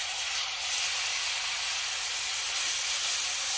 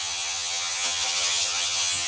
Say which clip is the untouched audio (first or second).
first